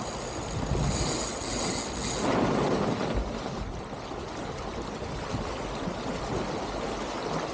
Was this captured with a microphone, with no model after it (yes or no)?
yes